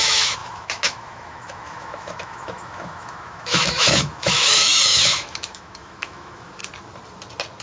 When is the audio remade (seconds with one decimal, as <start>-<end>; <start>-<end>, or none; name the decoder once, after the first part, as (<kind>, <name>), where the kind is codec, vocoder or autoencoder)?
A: 0.0-6.6 (autoencoder, DAC-VAE)